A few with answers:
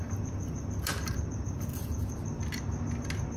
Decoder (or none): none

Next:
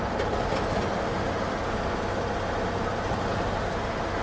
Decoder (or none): none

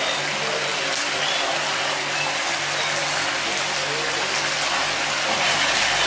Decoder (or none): none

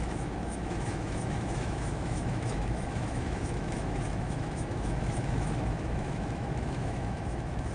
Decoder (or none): autoencoder, DAC-VAE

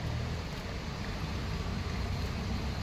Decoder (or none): none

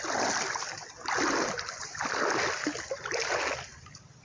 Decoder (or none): none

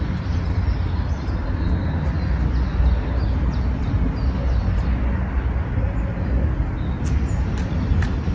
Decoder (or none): none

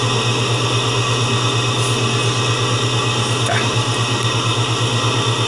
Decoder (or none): none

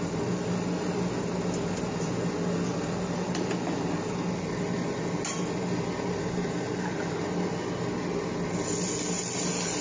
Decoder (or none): none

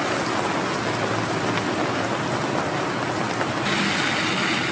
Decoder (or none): none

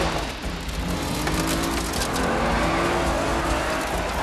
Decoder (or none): none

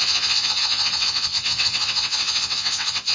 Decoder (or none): vocoder, WaveNeXt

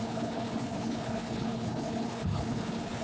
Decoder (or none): codec, HILCodec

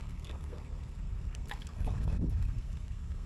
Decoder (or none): codec, SNAC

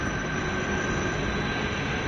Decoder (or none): none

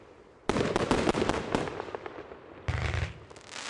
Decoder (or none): none